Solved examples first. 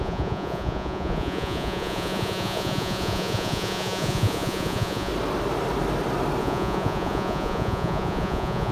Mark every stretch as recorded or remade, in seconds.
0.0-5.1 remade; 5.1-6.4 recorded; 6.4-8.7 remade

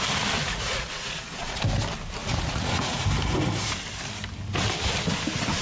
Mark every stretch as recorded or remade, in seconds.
0.0-0.4 recorded; 0.4-1.6 remade; 1.6-2.2 recorded; 2.2-3.0 remade; 3.0-5.6 recorded

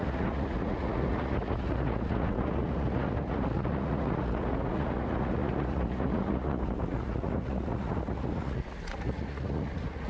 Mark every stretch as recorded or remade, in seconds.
0.0-10.1 remade

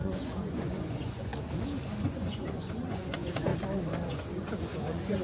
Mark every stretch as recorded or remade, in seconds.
0.0-1.3 remade; 1.3-2.0 recorded; 2.0-3.5 remade; 3.5-4.1 recorded; 4.1-5.2 remade

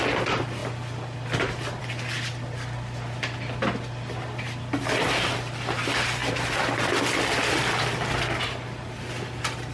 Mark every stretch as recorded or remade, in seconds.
0.0-9.7 recorded